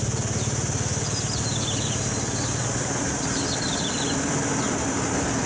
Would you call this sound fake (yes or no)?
no